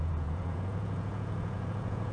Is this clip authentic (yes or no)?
no